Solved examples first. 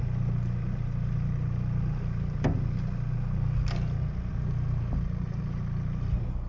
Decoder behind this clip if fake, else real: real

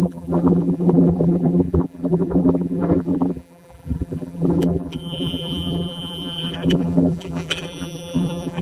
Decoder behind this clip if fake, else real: fake, vocoder, BigVGAN v2